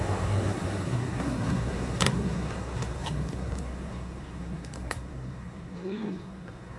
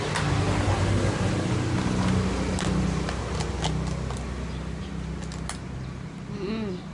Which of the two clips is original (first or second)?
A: second